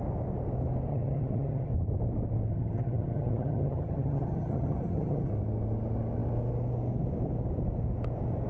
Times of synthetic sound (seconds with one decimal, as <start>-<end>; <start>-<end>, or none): 0.9-1.7; 2.5-5.3